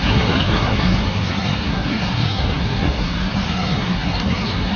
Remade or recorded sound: remade